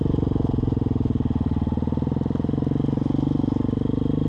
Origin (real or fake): real